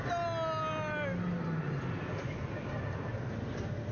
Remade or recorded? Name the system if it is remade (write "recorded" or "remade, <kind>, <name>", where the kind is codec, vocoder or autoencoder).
recorded